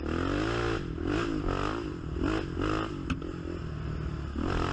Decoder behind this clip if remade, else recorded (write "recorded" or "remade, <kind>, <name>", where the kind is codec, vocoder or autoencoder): recorded